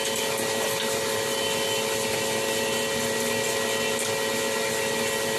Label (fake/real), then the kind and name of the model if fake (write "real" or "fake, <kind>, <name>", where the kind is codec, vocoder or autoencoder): real